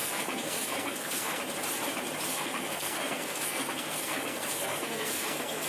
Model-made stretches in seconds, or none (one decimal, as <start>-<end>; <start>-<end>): 0.0-1.4; 2.3-5.7